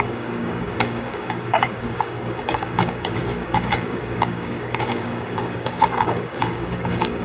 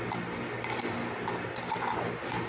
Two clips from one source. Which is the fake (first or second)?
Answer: first